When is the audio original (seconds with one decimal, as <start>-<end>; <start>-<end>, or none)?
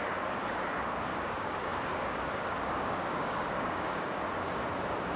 0.0-1.1; 4.2-5.2